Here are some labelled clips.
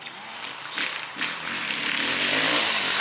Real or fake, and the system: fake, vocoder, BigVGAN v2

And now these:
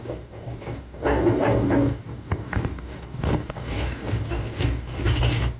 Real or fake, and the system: fake, codec, DAC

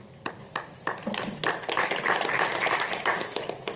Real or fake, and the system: real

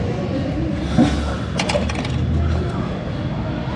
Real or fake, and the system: real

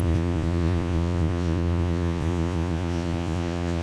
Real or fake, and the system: fake, vocoder, Vocos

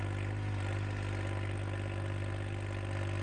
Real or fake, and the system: real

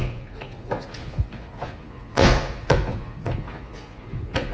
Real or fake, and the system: fake, vocoder, Vocos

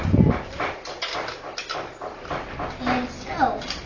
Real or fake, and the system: real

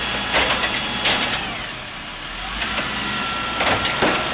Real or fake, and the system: real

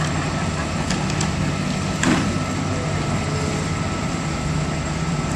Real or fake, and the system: real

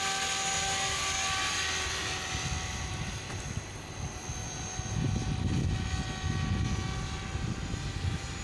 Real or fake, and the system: real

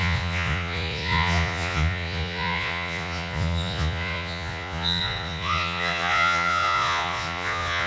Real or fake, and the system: fake, vocoder, Vocos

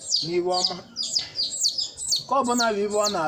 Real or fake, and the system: real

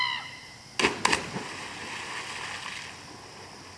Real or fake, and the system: real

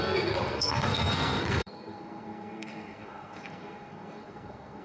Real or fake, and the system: fake, codec, SNAC